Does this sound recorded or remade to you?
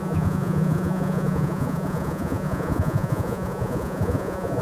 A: remade